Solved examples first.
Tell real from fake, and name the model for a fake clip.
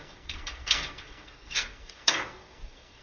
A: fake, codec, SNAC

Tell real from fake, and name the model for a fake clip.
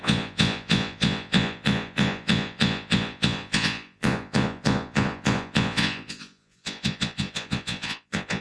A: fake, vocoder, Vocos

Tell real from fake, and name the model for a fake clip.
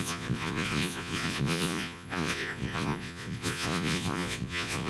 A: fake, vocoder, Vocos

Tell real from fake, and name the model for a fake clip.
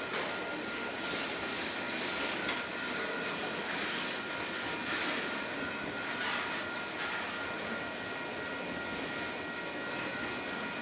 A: real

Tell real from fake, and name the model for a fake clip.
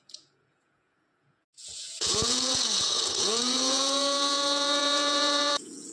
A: fake, vocoder, Vocos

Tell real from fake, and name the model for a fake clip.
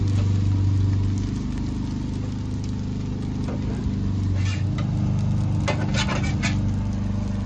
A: real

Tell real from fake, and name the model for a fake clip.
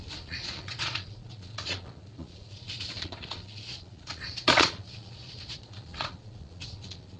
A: fake, vocoder, Vocos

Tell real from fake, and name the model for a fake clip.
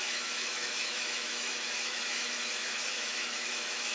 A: fake, autoencoder, DAC-VAE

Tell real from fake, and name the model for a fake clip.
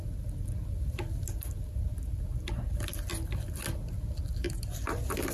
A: real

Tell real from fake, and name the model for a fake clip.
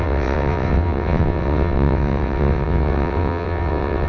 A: fake, vocoder, WaveNeXt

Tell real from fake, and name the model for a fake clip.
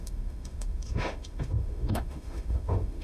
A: fake, autoencoder, DAC-VAE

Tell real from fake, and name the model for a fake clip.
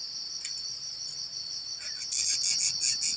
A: real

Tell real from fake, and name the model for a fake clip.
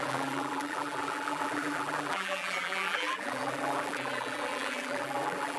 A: fake, vocoder, BigVGAN v2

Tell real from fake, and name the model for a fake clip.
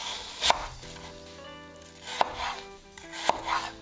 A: real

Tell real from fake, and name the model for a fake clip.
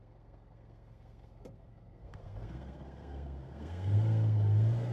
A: fake, codec, SNAC